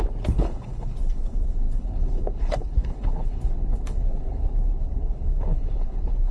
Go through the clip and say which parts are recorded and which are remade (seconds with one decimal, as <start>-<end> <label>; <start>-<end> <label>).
0.0-6.3 remade